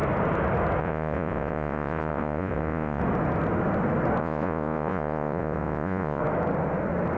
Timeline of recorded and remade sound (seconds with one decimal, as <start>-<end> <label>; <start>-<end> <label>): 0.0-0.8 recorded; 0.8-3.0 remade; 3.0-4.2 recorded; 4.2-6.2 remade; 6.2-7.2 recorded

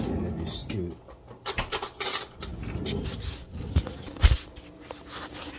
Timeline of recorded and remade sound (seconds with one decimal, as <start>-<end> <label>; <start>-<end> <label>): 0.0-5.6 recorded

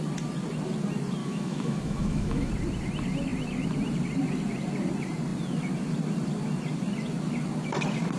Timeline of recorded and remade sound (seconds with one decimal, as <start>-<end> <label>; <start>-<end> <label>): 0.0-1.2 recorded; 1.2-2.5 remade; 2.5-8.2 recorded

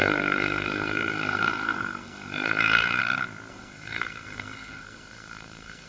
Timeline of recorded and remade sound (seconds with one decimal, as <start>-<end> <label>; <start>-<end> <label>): 0.0-3.0 remade; 3.0-3.5 recorded; 3.5-5.9 remade